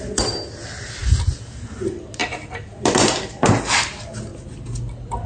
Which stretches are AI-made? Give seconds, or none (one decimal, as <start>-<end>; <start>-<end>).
none